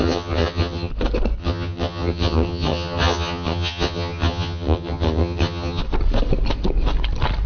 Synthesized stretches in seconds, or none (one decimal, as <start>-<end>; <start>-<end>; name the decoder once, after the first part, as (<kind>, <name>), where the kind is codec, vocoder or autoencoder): 0.0-0.9 (vocoder, HiFi-GAN); 1.4-5.8